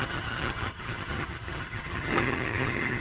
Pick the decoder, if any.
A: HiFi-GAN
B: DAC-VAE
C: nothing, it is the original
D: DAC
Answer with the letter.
A